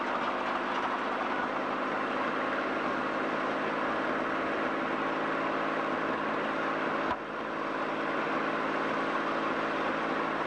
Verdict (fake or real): real